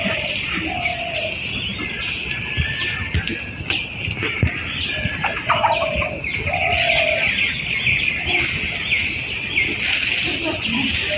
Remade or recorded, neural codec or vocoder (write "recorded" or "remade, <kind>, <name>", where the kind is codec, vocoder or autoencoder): recorded